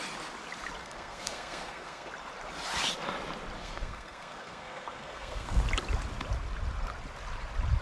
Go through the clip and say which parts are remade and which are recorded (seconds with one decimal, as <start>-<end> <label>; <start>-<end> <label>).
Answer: 0.0-0.8 recorded; 0.8-2.1 remade; 2.1-3.6 recorded; 3.6-5.6 remade; 5.6-7.8 recorded